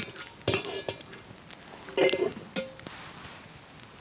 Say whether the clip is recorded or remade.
recorded